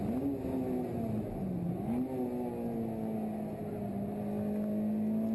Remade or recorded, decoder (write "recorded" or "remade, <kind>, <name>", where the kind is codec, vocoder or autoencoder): recorded